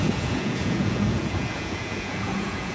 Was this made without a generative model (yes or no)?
no